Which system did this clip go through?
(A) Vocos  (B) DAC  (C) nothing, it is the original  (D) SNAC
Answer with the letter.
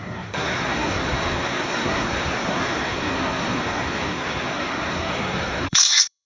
D